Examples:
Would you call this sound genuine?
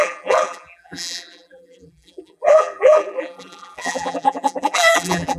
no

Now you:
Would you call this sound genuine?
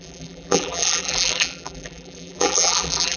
no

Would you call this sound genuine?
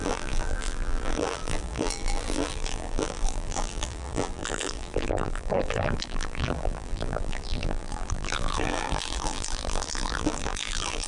no